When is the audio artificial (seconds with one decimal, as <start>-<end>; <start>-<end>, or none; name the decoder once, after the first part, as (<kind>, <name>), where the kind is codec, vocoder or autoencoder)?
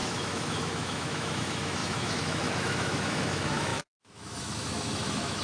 0.0-5.4 (autoencoder, DAC-VAE)